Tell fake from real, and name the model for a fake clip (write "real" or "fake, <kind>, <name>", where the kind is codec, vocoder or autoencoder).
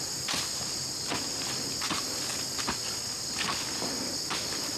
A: real